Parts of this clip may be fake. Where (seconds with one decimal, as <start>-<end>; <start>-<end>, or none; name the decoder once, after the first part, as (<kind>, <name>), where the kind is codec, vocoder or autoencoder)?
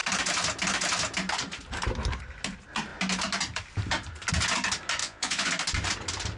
5.0-5.5 (vocoder, Vocos)